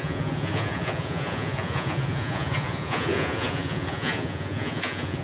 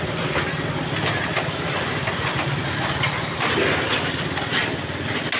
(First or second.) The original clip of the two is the second